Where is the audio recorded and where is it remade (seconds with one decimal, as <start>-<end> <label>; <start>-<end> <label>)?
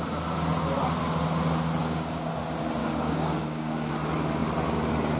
0.0-1.8 recorded; 1.8-2.3 remade; 2.3-2.8 recorded; 2.8-3.9 remade; 3.9-5.2 recorded